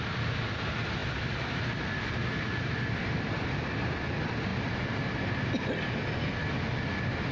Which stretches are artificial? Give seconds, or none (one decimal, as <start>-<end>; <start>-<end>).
none